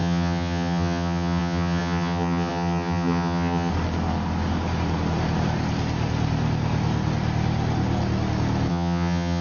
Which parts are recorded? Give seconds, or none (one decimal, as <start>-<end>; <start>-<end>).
3.7-8.7